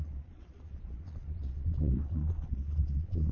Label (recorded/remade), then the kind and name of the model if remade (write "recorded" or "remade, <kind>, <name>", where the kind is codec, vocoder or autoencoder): remade, vocoder, Vocos